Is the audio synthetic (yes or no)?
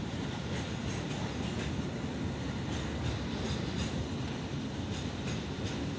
no